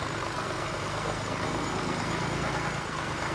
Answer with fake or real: fake